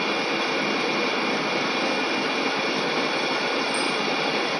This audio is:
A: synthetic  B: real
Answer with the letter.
B